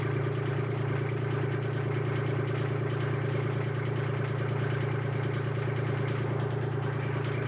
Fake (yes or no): no